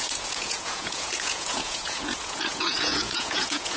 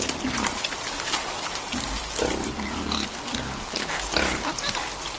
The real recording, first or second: second